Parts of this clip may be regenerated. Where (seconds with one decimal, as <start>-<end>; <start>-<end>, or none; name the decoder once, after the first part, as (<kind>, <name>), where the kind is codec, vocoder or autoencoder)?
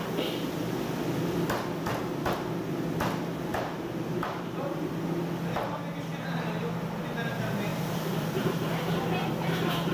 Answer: 1.9-2.6 (vocoder, BigVGAN v2); 3.5-4.9; 7.7-8.9